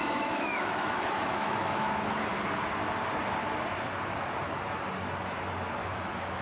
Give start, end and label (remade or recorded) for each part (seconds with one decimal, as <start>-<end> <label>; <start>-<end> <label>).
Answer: 0.0-1.9 remade; 1.9-5.8 recorded; 5.8-6.4 remade